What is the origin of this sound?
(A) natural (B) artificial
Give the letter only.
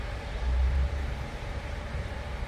B